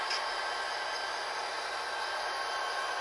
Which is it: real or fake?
real